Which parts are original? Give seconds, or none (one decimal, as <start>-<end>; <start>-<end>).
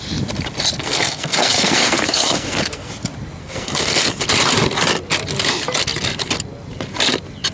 0.0-0.8; 2.9-3.4; 4.1-7.5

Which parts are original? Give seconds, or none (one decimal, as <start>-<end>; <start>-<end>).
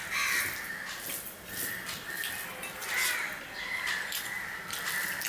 0.0-5.3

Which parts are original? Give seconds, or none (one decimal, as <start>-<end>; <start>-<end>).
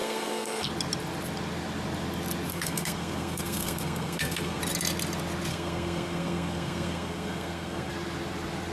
0.7-2.5; 4.6-5.5; 7.9-8.7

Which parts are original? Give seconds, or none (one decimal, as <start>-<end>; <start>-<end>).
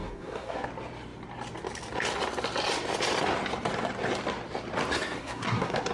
0.7-5.2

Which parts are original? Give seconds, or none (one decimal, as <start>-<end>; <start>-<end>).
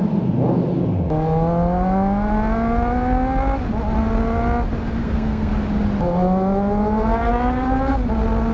0.0-5.0; 5.5-8.5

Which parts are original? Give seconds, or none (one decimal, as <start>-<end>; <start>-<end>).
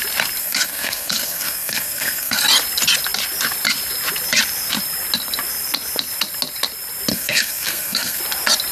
0.0-0.4; 2.4-7.1; 8.2-8.7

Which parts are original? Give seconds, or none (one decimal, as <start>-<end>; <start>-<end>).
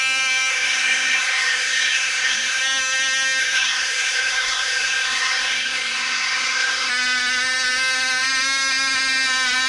0.0-0.5; 2.6-3.4; 6.9-9.7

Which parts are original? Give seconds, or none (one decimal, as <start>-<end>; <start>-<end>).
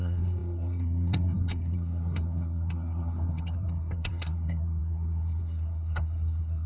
none